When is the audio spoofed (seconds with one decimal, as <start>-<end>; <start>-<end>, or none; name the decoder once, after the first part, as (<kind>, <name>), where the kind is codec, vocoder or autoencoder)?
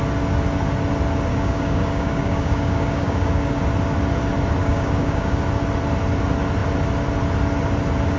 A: 1.3-3.6 (codec, DAC); 4.6-5.4